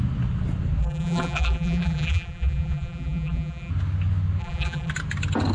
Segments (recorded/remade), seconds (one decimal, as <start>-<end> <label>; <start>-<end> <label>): 0.0-0.8 recorded; 0.8-3.7 remade; 3.7-4.4 recorded; 4.4-4.9 remade; 4.9-5.5 recorded